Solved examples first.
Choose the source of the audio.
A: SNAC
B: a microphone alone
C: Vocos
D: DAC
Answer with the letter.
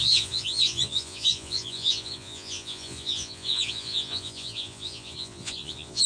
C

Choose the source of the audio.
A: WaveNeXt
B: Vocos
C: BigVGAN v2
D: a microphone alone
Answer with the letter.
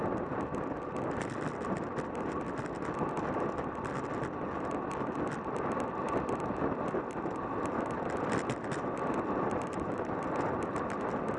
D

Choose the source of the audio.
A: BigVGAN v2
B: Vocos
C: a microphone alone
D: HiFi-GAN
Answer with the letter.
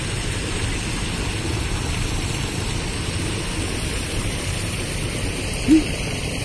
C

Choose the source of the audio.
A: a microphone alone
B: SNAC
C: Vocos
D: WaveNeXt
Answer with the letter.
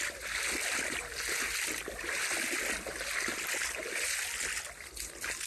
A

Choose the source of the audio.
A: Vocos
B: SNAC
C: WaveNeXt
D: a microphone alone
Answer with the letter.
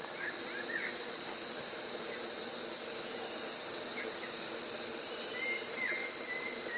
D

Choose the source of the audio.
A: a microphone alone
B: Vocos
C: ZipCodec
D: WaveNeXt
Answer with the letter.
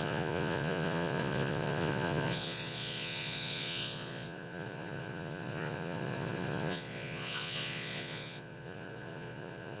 B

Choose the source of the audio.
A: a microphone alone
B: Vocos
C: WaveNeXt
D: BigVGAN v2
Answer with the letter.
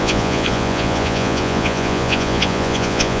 B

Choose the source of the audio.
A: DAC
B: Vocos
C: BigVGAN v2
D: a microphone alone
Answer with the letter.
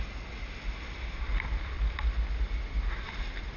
D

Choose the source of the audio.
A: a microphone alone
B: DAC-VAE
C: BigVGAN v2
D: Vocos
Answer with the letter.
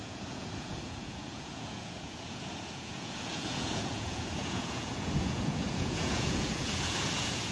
D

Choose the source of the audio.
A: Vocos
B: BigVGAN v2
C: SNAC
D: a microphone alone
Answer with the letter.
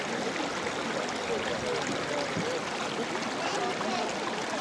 D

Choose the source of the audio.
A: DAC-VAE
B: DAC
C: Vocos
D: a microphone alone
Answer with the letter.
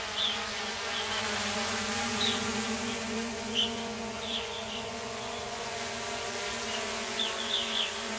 C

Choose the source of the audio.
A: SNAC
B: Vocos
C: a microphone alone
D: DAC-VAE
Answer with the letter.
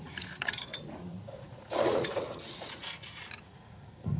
B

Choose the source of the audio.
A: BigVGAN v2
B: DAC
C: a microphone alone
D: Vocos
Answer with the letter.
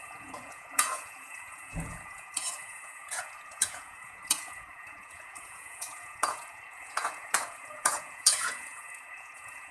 D